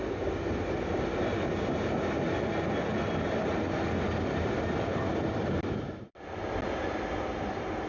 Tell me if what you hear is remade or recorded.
recorded